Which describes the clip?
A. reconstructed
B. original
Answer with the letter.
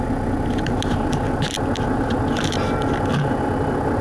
B